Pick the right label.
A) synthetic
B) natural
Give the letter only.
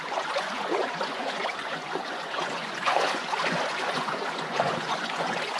A